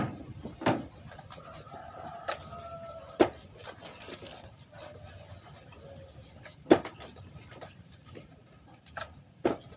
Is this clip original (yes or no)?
yes